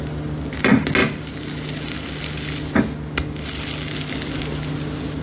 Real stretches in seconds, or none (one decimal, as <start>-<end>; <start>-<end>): 0.0-5.2